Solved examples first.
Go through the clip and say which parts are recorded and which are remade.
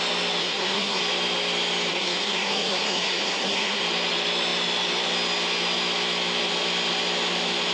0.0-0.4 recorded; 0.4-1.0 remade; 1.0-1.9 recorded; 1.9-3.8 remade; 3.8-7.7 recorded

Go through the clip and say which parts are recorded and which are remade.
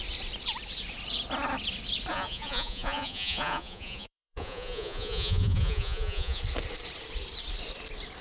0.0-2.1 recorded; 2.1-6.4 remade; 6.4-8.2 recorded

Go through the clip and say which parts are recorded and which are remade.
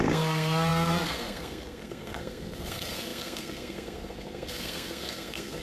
0.0-5.6 remade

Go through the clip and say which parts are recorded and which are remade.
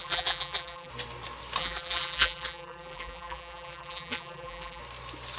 0.0-0.9 remade; 0.9-1.6 recorded; 1.6-4.8 remade; 4.8-5.4 recorded